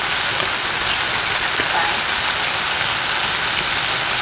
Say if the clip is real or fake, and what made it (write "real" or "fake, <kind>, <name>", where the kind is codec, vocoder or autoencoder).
real